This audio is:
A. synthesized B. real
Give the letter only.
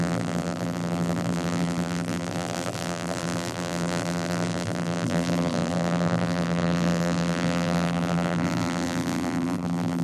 A